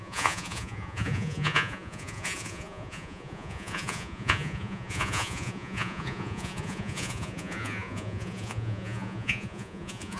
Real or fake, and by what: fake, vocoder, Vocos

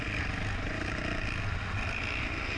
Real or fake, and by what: real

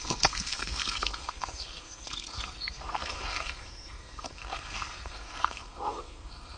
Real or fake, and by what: fake, codec, SNAC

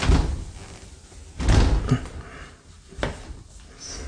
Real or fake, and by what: real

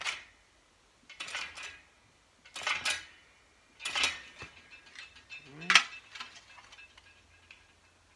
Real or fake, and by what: real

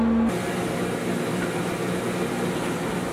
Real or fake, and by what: real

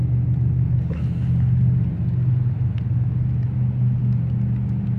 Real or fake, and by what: real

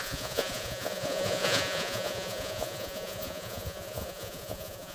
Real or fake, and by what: fake, vocoder, Vocos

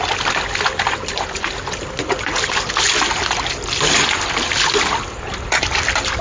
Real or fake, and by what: real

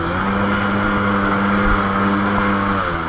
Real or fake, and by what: real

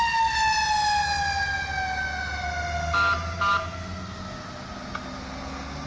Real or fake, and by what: real